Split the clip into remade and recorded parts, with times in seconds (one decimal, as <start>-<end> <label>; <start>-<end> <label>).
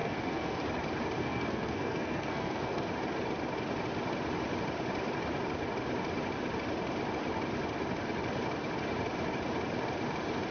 0.0-0.6 remade; 0.6-1.2 recorded; 1.2-2.9 remade; 2.9-10.5 recorded